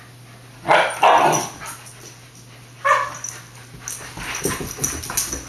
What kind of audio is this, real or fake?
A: real